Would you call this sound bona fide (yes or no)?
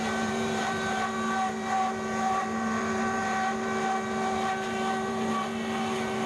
no